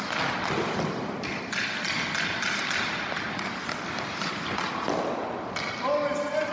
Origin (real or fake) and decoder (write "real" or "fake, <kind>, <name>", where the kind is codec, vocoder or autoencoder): real